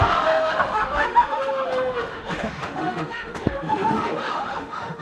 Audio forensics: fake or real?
fake